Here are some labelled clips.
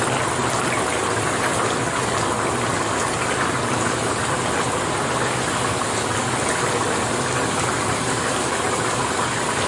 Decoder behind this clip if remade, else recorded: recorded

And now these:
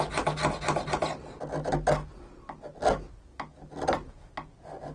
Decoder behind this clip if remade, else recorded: recorded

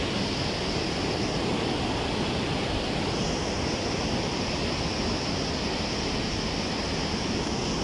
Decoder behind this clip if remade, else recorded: recorded